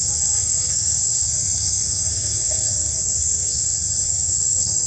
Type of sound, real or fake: fake